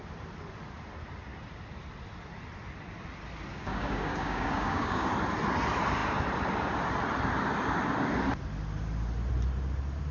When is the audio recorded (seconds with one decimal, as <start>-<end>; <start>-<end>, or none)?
0.0-3.5; 5.1-10.1